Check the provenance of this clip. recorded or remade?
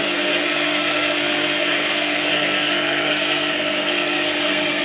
remade